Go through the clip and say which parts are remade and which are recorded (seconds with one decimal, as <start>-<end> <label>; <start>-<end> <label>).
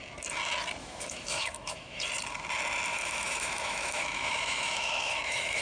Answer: 0.0-0.8 recorded; 0.8-2.0 remade; 2.0-2.9 recorded; 2.9-5.6 remade